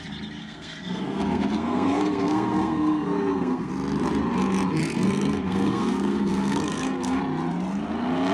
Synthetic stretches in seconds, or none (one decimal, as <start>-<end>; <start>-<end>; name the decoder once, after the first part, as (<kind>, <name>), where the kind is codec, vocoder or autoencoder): 0.4-3.7 (codec, SNAC); 4.8-7.2